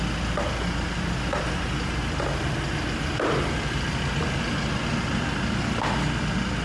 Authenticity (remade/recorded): recorded